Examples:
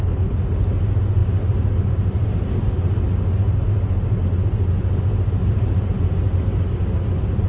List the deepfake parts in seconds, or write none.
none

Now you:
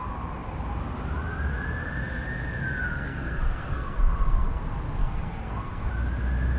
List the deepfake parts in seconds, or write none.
2.8-4.6 (codec, SNAC); 5.0-5.9

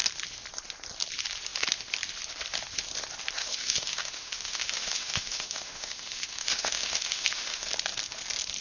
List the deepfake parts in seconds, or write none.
3.4-7.7 (autoencoder, DAC-VAE)

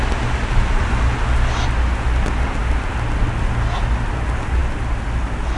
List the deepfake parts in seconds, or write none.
none